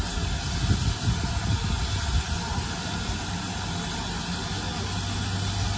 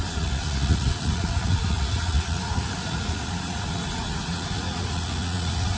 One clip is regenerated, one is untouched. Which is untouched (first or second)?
first